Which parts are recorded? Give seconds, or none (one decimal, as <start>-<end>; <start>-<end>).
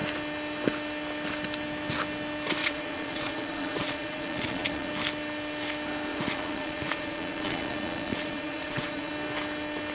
0.0-2.6; 4.9-6.1; 9.1-9.9